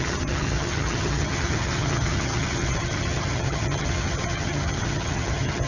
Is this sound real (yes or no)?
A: no